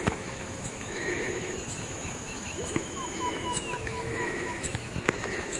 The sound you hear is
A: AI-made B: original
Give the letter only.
A